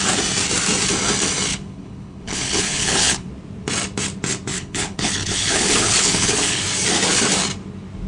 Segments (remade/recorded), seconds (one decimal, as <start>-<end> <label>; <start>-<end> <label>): 0.0-1.5 recorded; 1.5-3.3 remade; 3.3-4.5 recorded; 4.5-6.6 remade; 6.6-8.1 recorded